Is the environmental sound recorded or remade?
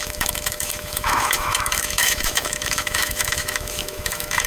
remade